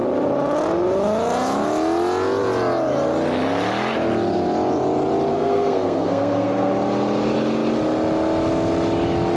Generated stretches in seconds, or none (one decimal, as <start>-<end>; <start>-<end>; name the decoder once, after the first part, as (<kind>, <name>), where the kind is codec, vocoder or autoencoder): 5.3-6.7 (codec, SNAC)